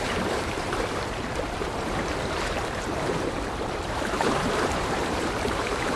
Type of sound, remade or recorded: remade